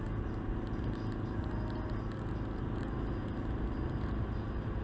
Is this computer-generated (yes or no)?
no